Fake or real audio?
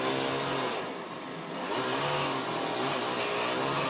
real